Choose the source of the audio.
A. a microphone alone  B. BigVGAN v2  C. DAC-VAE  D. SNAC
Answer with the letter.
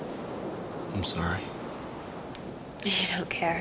A